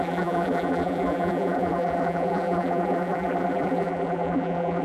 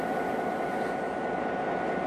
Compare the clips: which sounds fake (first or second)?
first